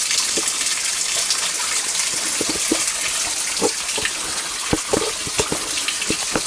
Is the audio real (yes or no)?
yes